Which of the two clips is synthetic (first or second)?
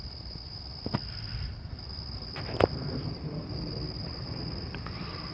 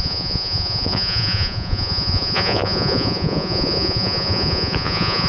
second